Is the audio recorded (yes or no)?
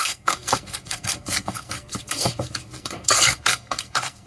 no